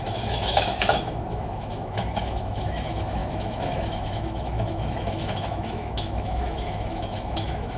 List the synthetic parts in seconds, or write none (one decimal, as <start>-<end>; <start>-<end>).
0.0-7.8